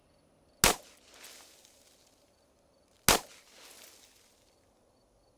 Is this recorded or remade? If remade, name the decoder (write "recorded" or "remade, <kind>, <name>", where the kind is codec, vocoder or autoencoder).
recorded